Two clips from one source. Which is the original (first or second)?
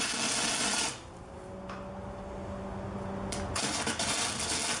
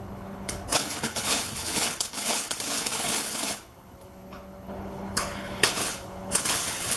first